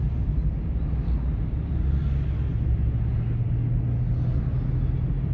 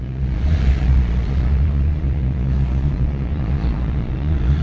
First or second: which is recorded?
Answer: first